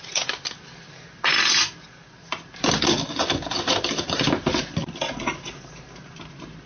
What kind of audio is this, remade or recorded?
recorded